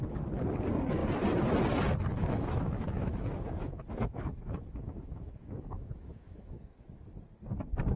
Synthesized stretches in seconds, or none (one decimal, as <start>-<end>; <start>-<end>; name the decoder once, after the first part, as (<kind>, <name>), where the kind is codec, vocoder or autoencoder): 2.1-6.9 (autoencoder, DAC-VAE)